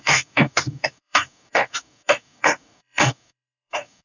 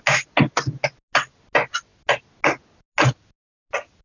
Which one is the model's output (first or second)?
first